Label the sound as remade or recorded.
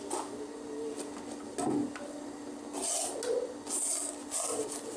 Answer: recorded